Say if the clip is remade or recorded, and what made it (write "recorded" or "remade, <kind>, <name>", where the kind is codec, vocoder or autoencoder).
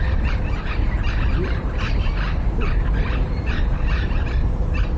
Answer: remade, vocoder, BigVGAN v2